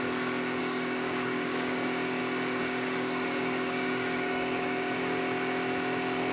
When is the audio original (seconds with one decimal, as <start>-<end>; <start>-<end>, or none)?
0.0-0.6; 2.2-2.6; 5.2-6.3